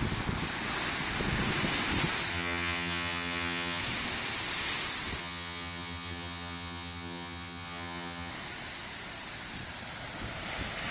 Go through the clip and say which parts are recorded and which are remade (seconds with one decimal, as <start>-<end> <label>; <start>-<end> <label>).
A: 0.0-2.3 recorded; 2.3-3.8 remade; 3.8-5.2 recorded; 5.2-8.3 remade; 8.3-10.9 recorded